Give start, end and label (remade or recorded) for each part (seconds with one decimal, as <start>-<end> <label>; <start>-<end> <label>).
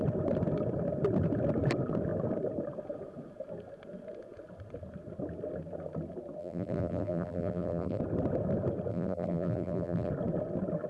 0.0-6.4 recorded; 6.4-8.0 remade; 8.0-8.9 recorded; 8.9-10.1 remade; 10.1-10.9 recorded